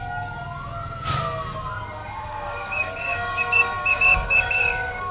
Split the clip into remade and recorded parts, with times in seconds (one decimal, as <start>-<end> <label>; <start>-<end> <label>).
0.0-2.0 recorded; 2.0-5.1 remade